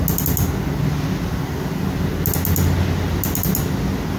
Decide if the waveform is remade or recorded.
recorded